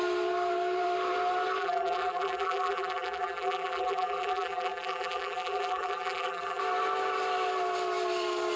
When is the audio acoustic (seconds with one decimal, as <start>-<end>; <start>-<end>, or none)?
0.0-1.6; 6.6-8.6